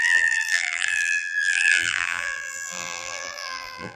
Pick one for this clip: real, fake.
fake